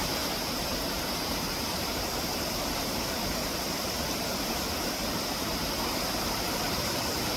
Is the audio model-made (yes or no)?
yes